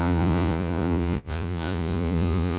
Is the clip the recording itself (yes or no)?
no